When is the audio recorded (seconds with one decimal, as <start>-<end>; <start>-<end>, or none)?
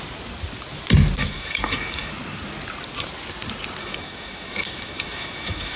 0.0-1.2; 2.1-3.8